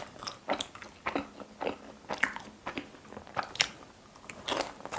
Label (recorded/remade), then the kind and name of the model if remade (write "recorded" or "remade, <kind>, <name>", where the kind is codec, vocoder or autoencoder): recorded